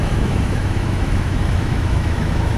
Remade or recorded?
remade